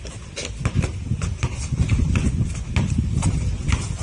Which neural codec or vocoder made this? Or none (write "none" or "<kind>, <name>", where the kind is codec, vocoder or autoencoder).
none